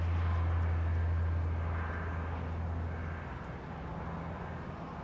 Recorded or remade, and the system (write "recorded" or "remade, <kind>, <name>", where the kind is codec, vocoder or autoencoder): recorded